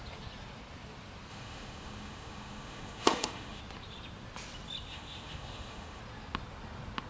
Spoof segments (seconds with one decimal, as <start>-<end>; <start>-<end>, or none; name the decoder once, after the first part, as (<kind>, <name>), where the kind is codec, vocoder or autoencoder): 1.3-3.6 (autoencoder, DAC-VAE); 4.9-6.0